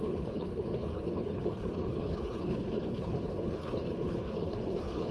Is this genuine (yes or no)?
no